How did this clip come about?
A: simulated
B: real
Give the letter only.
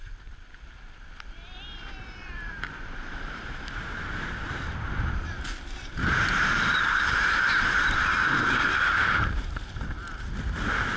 A